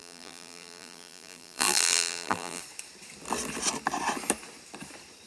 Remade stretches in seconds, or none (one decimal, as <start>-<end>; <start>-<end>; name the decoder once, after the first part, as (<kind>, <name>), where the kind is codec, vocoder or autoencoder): 0.0-2.6 (vocoder, BigVGAN v2)